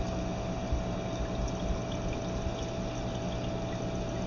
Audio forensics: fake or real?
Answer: real